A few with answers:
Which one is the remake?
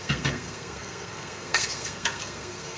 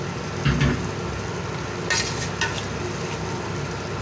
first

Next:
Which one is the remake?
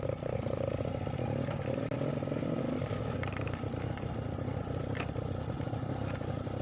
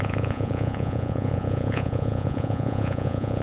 second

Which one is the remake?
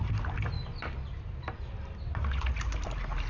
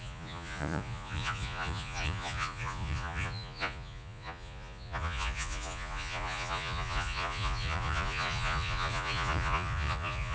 second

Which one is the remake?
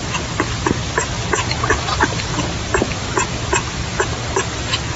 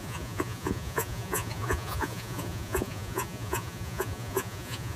second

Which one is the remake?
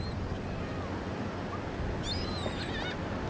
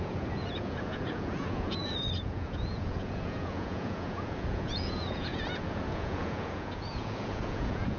second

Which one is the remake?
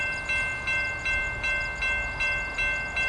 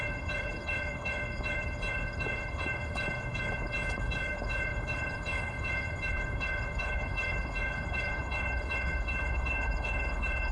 second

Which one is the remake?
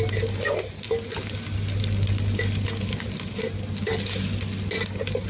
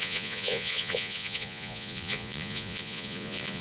second